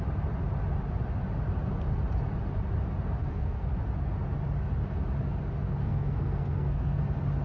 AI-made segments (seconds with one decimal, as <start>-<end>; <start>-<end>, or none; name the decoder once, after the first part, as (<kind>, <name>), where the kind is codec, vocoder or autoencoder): 3.2-3.7 (codec, SNAC); 5.8-7.0